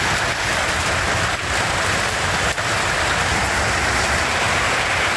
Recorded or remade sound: recorded